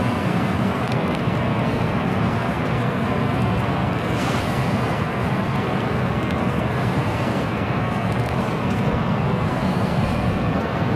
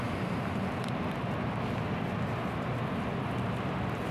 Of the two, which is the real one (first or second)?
second